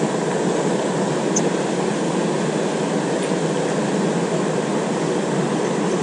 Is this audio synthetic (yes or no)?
no